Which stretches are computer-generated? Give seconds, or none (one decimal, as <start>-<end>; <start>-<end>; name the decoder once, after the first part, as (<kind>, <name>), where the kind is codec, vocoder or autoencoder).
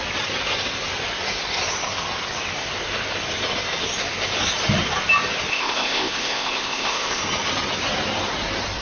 5.5-7.2 (codec, ZipCodec)